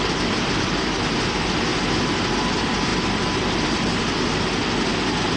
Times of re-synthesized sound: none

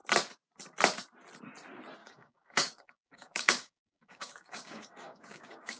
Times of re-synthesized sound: 2.0-5.8 (codec, DAC)

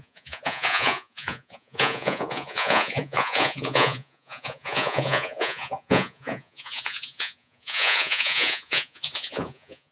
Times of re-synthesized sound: 0.0-9.9 (vocoder, Vocos)

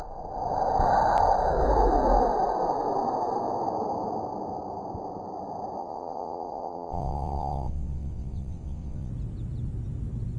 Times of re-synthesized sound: 5.8-9.1 (vocoder, WaveNeXt)

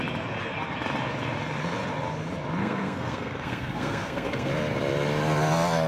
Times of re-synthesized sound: 2.6-4.5 (codec, SNAC)

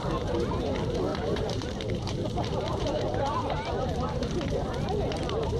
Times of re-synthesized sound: 1.1-4.5 (vocoder, BigVGAN v2)

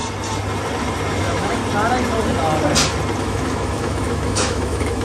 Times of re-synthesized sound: 1.2-1.6 (autoencoder, DAC-VAE); 3.2-5.0